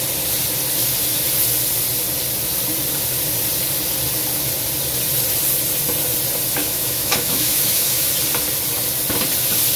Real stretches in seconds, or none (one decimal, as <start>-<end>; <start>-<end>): 0.0-6.6; 8.1-9.8